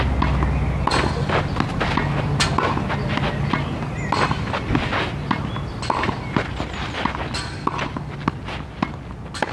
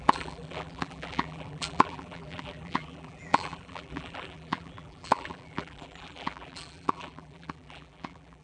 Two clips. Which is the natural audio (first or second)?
first